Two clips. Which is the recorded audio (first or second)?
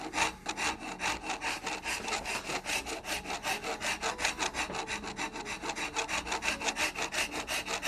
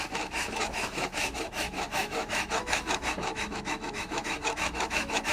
first